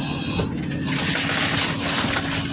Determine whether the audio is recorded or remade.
recorded